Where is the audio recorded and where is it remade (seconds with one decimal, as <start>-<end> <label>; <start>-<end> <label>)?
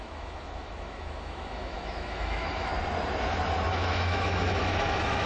0.0-2.7 remade; 2.7-3.7 recorded; 3.7-5.3 remade